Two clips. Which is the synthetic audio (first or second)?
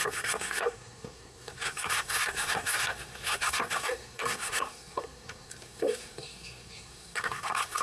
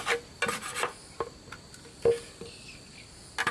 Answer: first